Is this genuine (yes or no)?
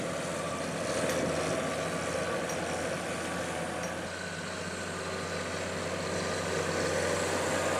yes